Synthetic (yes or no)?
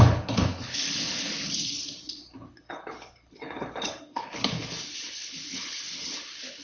yes